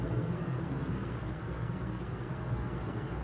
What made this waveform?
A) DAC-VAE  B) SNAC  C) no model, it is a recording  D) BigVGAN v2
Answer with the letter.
B